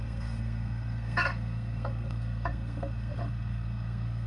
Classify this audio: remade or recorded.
remade